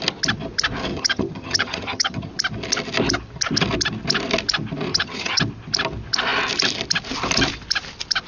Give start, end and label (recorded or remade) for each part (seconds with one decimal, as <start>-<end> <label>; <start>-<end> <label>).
0.0-0.9 recorded; 0.9-2.3 remade; 2.3-4.9 recorded; 4.9-5.4 remade; 5.4-8.3 recorded